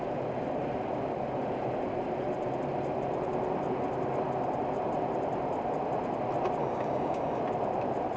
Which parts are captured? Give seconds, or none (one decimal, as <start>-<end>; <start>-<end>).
0.0-6.6; 7.4-8.2